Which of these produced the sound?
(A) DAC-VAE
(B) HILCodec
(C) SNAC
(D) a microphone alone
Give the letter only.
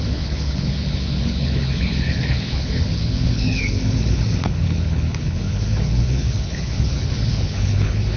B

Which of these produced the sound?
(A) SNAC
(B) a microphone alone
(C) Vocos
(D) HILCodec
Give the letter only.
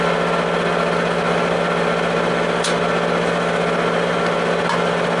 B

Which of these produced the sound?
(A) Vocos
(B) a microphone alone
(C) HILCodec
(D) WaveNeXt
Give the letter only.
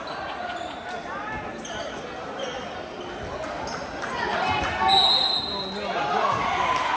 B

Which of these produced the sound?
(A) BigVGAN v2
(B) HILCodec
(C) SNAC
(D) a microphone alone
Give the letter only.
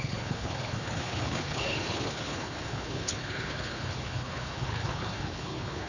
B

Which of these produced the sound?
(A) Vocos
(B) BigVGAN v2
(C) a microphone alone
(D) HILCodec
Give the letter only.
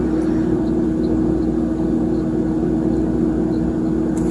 C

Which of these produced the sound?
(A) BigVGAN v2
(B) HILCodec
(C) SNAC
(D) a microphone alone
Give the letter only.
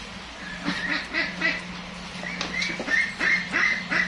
D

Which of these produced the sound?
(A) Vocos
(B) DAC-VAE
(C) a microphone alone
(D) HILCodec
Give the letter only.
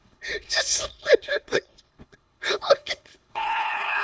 D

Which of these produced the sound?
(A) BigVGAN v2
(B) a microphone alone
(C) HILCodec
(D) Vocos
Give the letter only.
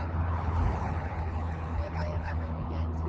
C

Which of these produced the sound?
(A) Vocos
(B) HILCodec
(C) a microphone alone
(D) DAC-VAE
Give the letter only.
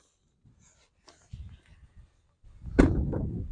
C